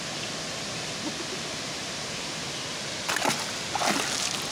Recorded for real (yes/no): yes